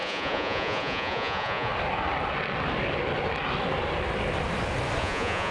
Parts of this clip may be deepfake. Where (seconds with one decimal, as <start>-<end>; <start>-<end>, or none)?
0.0-1.7; 5.0-5.5